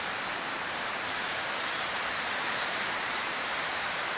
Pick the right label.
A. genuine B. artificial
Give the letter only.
B